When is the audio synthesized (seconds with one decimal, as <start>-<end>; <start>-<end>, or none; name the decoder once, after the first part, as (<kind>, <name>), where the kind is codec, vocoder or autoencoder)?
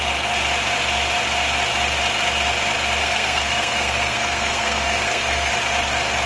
3.0-5.5 (codec, SNAC)